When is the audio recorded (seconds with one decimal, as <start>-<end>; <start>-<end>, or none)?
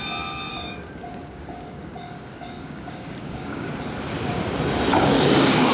0.0-0.5; 3.7-4.9